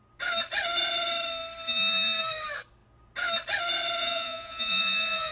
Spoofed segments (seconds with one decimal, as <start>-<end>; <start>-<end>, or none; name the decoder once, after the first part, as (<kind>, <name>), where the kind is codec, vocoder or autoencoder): 4.0-5.3 (vocoder, Vocos)